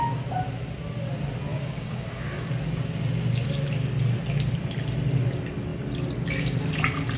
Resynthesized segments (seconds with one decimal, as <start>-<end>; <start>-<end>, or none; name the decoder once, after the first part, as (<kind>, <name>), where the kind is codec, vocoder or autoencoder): 1.5-2.5 (codec, DAC)

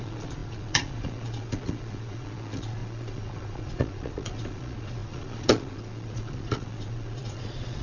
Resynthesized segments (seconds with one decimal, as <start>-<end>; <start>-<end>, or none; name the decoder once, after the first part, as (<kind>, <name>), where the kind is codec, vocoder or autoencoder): 0.0-7.8 (vocoder, Vocos)

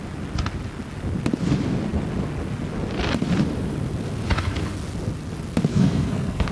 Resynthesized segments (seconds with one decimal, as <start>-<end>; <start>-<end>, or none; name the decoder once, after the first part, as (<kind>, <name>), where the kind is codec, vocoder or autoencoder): 5.7-6.5 (codec, SNAC)